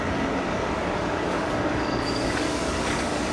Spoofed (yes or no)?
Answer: yes